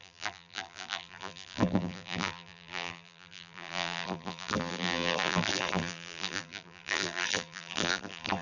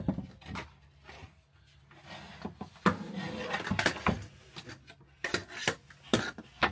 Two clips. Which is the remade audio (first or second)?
first